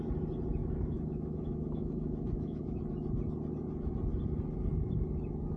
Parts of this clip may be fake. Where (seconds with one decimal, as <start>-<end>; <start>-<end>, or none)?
0.6-2.8